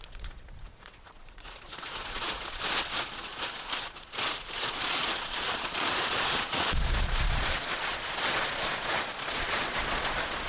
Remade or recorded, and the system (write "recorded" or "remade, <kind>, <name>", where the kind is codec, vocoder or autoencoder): remade, vocoder, Vocos